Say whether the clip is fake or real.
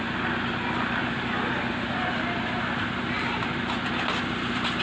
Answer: real